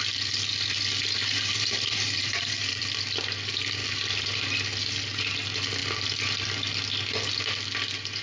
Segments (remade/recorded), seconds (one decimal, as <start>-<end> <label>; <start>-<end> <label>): 0.0-1.2 recorded; 1.2-2.8 remade; 2.8-8.2 recorded